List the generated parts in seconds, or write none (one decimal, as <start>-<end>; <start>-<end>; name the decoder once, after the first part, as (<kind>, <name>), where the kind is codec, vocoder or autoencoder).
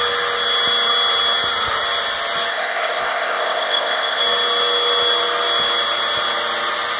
2.5-4.2 (codec, ZipCodec)